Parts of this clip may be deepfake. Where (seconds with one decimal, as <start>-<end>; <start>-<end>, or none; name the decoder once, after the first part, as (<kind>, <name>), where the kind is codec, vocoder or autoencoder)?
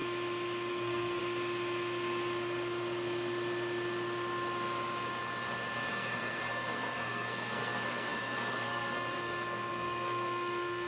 0.7-1.2 (codec, SNAC); 5.9-10.9